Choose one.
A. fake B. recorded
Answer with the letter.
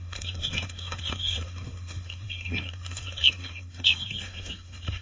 A